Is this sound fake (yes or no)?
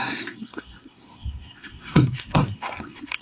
yes